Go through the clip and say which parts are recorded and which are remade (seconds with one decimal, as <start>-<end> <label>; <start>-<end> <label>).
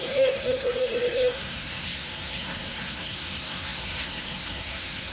0.0-5.1 remade